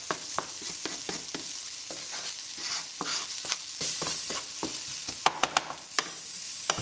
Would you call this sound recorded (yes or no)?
yes